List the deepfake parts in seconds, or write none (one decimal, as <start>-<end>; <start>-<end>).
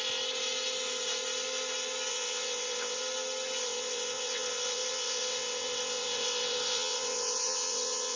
2.1-3.0; 3.6-8.2